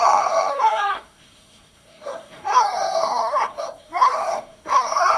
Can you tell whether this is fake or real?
fake